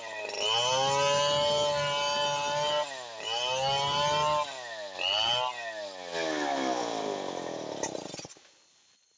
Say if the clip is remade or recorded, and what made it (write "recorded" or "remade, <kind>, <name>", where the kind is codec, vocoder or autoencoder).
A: recorded